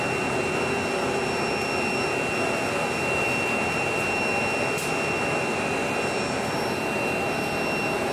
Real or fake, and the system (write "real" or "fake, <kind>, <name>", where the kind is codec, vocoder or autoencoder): real